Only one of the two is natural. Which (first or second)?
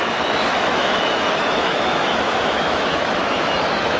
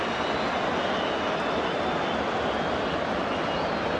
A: second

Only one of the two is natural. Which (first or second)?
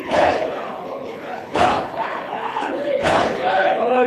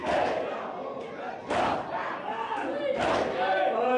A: second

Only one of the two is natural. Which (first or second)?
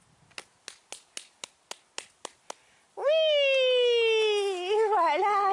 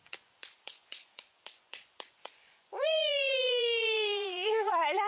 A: first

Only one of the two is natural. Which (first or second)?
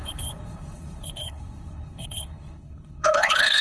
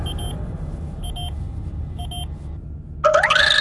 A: second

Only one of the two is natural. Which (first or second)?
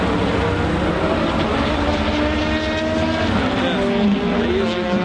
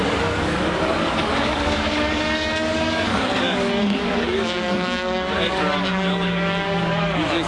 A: first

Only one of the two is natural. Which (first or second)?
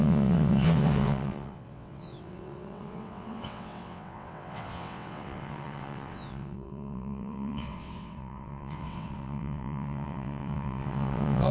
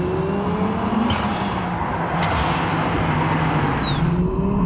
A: second